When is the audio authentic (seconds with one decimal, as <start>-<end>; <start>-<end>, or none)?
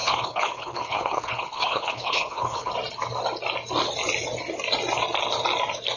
2.7-6.0